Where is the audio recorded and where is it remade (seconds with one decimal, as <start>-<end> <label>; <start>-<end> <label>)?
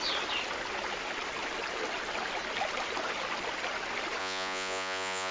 0.0-4.2 recorded; 4.2-5.3 remade